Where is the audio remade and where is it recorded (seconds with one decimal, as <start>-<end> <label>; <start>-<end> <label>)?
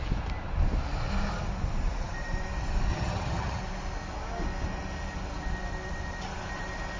0.0-2.9 recorded; 2.9-3.6 remade; 3.6-7.0 recorded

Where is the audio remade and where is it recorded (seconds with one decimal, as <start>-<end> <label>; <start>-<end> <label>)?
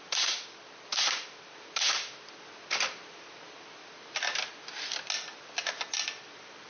0.0-6.7 recorded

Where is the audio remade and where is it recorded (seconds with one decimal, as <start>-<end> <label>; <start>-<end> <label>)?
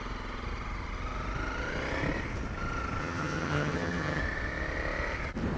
0.0-3.0 recorded; 3.0-4.2 remade; 4.2-5.6 recorded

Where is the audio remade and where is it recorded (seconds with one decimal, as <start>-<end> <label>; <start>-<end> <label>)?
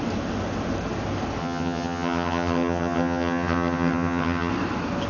0.0-1.4 recorded; 1.4-4.5 remade; 4.5-5.1 recorded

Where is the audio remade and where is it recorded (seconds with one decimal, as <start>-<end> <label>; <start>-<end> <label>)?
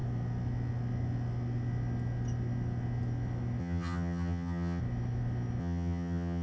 0.0-3.6 recorded; 3.6-4.8 remade; 4.8-5.6 recorded; 5.6-6.4 remade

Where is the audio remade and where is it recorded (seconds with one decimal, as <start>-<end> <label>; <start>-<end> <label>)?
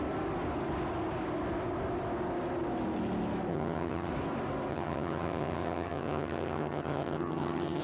0.0-3.5 recorded; 3.5-4.1 remade; 4.1-4.7 recorded; 4.7-7.8 remade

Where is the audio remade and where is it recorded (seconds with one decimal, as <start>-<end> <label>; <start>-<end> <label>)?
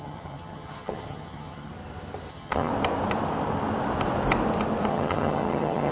0.0-1.7 remade; 1.7-2.3 recorded; 2.3-2.7 remade; 2.7-4.9 recorded; 4.9-5.9 remade